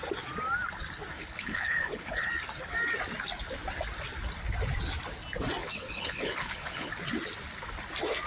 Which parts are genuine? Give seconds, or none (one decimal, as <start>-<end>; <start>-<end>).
0.0-1.1; 2.3-5.6; 6.9-8.3

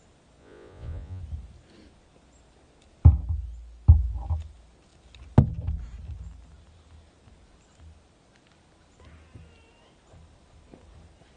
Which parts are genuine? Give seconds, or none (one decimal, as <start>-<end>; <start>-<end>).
0.0-0.4; 1.2-11.4

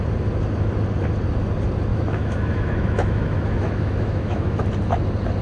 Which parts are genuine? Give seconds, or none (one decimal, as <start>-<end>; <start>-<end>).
0.0-1.9; 4.6-5.4

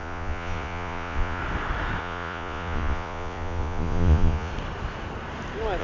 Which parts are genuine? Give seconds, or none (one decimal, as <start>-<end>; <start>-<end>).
1.4-2.0; 4.5-5.8

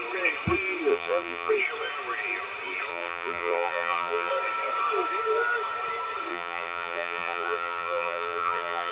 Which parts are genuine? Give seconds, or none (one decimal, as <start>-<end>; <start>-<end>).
0.0-0.9; 1.5-2.9; 4.3-6.3

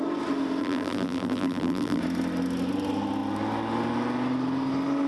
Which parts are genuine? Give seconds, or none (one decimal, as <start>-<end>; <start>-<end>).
0.0-0.6; 2.0-5.1

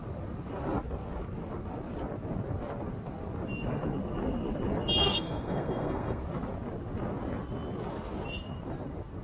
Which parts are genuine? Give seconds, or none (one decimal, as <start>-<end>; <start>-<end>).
0.0-5.0; 6.2-9.2

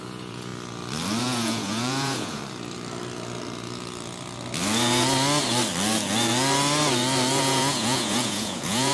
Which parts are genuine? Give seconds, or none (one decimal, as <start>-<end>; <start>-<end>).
0.5-1.2; 2.4-7.4